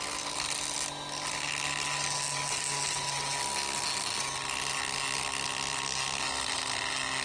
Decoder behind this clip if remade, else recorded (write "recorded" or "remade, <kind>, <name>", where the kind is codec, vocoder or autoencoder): recorded